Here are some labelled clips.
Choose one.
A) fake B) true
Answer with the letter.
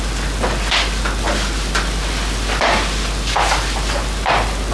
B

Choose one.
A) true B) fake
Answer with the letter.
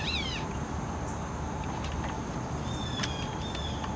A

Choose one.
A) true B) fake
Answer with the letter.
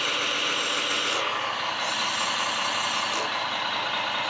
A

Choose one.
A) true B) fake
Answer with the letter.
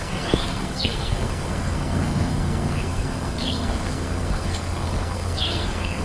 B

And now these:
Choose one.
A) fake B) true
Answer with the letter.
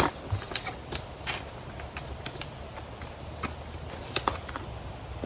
B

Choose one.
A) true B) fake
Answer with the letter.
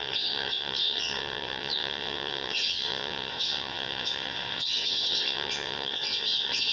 B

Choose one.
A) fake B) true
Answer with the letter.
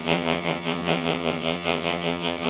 A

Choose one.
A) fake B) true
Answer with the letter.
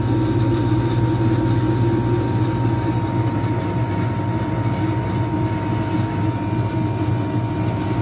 B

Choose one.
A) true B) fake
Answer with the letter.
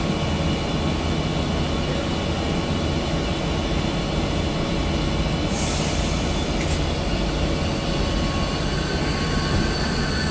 A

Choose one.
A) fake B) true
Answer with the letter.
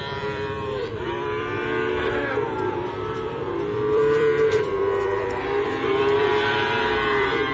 A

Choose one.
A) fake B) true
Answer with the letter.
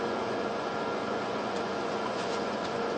A